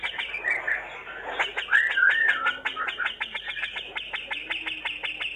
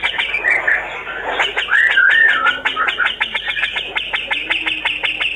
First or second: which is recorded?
first